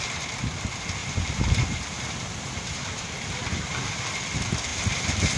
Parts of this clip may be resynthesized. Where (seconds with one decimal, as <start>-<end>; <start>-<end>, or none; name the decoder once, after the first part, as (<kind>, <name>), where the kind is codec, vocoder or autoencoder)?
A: 1.0-4.2 (vocoder, BigVGAN v2); 4.7-5.4